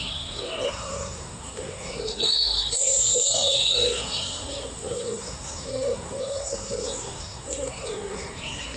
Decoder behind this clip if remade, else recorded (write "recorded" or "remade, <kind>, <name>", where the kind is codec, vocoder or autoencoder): remade, codec, SNAC